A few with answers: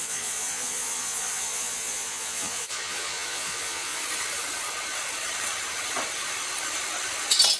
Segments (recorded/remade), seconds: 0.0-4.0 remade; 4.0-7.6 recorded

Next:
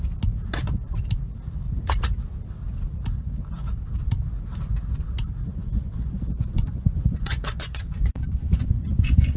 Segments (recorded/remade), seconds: 0.0-5.6 recorded; 5.6-9.4 remade

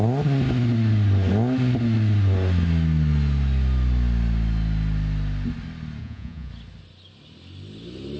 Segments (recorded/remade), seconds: 0.0-6.0 recorded; 6.0-6.5 remade; 6.5-8.2 recorded

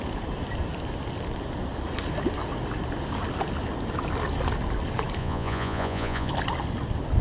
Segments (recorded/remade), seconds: 0.0-5.2 recorded; 5.2-6.3 remade; 6.3-7.2 recorded

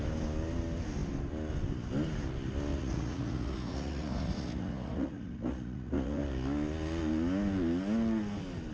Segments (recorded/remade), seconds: 0.0-2.7 recorded; 2.7-6.2 remade; 6.2-8.7 recorded

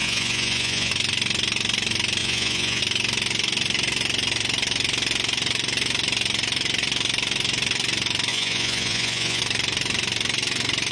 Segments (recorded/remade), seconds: 0.0-0.9 remade; 0.9-2.2 recorded; 2.2-2.8 remade; 2.8-8.3 recorded; 8.3-9.4 remade; 9.4-10.9 recorded

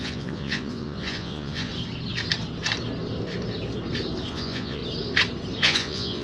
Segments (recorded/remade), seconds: 0.0-1.7 remade; 1.7-4.3 recorded; 4.3-4.8 remade; 4.8-5.6 recorded; 5.6-6.2 remade

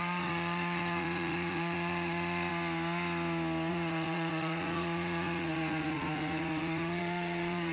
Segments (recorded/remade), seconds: 0.0-2.5 remade; 2.5-3.7 recorded; 3.7-7.7 remade